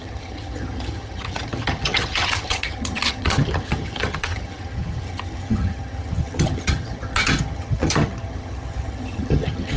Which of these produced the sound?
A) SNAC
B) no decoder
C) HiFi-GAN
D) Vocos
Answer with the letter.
C